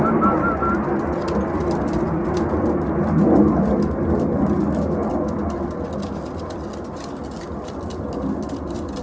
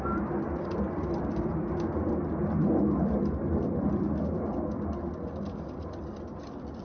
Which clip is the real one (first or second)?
first